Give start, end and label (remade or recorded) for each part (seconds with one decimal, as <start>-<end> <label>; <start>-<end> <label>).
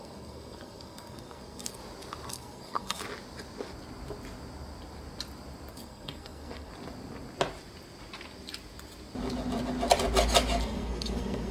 0.0-1.8 remade; 1.8-2.3 recorded; 2.3-3.0 remade; 3.0-5.7 recorded; 5.7-6.7 remade; 6.7-10.6 recorded; 10.6-11.5 remade